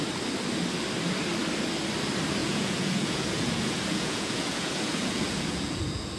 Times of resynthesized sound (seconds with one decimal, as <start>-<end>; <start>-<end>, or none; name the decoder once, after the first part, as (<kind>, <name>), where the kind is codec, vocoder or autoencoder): 2.4-6.2 (vocoder, Vocos)